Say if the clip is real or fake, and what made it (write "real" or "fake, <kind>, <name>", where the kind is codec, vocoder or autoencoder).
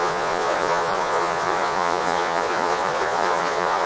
fake, vocoder, Vocos